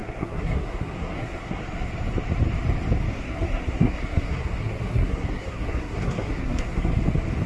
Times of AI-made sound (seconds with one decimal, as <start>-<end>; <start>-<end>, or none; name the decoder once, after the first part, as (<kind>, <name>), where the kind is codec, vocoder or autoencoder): 0.0-1.6 (codec, SNAC); 3.1-7.0